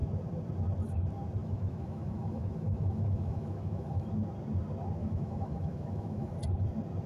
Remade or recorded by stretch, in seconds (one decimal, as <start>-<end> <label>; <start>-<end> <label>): 0.0-1.4 recorded; 1.4-4.1 remade; 4.1-5.0 recorded; 5.0-6.3 remade; 6.3-7.1 recorded